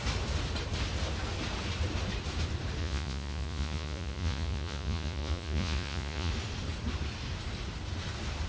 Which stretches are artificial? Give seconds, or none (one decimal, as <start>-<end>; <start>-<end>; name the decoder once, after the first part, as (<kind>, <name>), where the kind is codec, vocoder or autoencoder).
2.8-6.3 (vocoder, Vocos)